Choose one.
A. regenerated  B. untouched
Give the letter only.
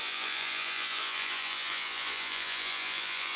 A